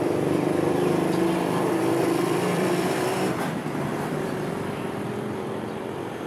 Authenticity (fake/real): fake